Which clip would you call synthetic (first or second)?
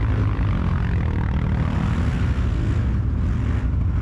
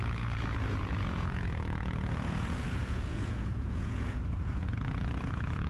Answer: second